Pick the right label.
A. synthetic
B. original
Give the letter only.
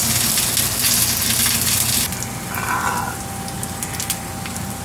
B